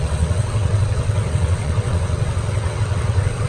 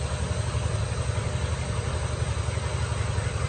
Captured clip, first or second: second